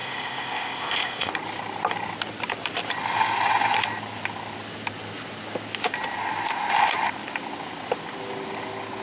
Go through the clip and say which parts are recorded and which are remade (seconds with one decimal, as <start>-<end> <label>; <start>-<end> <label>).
0.0-1.3 remade; 1.3-9.0 recorded